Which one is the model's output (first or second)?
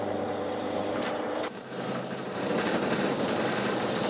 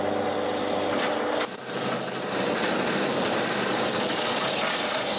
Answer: first